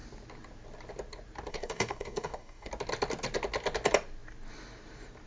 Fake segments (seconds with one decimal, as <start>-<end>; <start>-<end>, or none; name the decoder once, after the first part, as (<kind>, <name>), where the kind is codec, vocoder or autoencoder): 1.5-2.7 (codec, DAC)